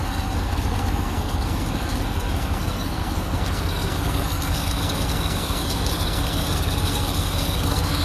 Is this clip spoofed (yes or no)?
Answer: yes